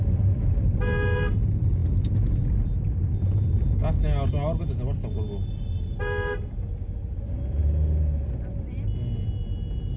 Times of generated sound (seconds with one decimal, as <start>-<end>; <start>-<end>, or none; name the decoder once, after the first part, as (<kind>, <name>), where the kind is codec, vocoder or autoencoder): none